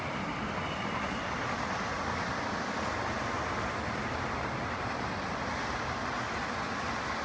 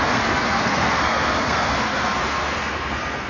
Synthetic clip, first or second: second